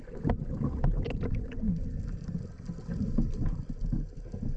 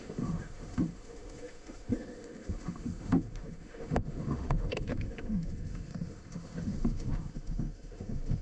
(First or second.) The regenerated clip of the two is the second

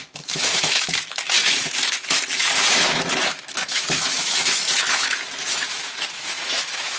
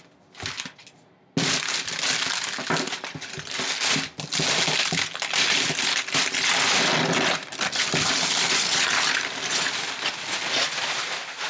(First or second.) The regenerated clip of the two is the first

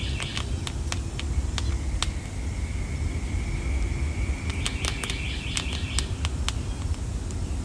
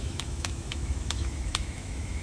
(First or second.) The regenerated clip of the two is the second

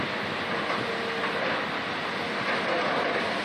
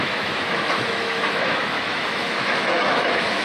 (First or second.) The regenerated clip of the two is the second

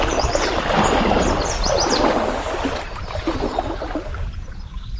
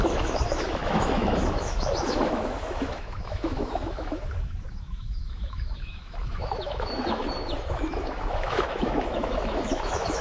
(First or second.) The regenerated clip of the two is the second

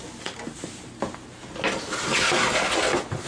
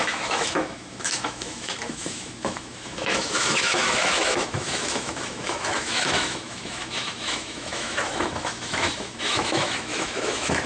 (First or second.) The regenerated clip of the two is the second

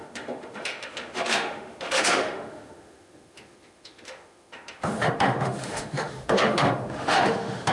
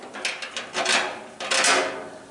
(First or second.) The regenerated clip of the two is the first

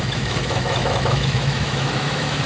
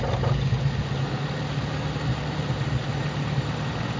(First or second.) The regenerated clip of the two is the first